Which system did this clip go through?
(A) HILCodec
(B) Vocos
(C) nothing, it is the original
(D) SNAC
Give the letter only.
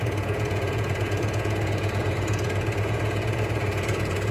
B